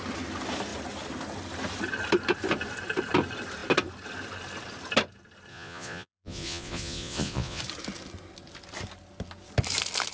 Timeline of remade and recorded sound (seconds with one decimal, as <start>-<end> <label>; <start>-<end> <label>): 0.0-5.5 recorded; 5.5-7.6 remade; 7.6-10.1 recorded

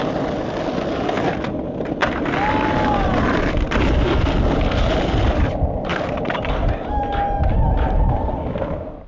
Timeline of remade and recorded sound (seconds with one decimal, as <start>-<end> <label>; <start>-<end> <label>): 0.0-5.9 recorded; 5.9-6.5 remade; 6.5-9.1 recorded

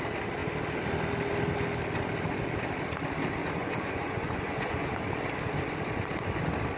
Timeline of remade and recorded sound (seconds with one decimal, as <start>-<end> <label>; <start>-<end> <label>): 0.0-3.4 recorded; 3.4-5.0 remade; 5.0-6.8 recorded

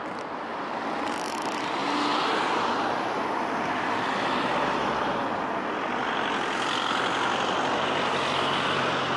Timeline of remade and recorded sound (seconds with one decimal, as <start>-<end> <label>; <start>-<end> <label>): 0.0-9.2 recorded

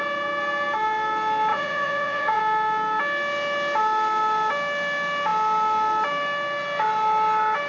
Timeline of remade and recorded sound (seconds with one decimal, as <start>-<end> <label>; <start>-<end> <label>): 0.0-1.5 recorded; 1.5-2.4 remade; 2.4-7.7 recorded

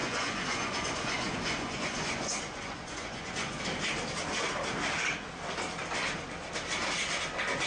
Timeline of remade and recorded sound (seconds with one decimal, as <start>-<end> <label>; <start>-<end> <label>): 0.0-3.6 remade; 3.6-7.7 recorded